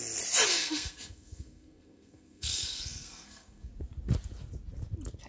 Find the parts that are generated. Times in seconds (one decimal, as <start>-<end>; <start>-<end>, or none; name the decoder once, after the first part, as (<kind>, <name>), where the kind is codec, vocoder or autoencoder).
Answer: 0.5-3.7 (codec, SNAC)